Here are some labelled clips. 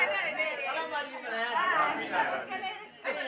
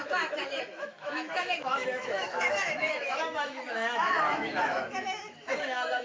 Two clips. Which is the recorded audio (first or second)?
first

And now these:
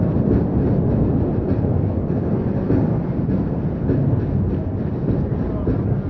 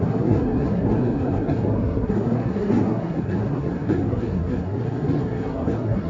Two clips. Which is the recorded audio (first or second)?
first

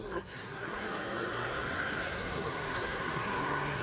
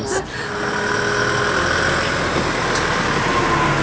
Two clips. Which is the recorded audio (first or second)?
second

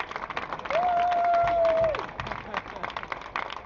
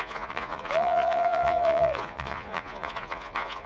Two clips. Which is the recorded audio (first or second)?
first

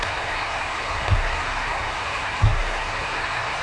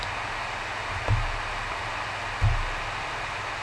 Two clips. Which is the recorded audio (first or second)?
second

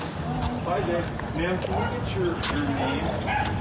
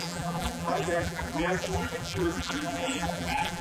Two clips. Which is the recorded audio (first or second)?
first